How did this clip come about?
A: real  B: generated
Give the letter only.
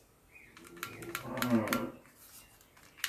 A